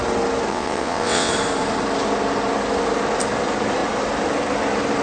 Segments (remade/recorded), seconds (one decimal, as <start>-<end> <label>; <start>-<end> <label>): 0.0-0.5 recorded; 0.5-1.3 remade; 1.3-5.0 recorded